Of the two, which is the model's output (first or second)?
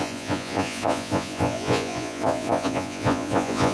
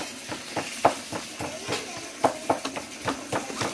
first